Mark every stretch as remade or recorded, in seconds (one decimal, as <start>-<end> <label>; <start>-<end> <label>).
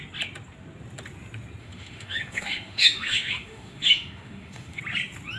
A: 0.0-1.6 recorded; 1.6-4.8 remade; 4.8-5.4 recorded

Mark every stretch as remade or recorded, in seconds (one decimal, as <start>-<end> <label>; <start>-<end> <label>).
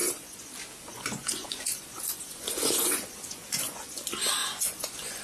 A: 0.0-0.5 remade; 0.5-0.9 recorded; 0.9-4.0 remade; 4.0-4.4 recorded; 4.4-5.2 remade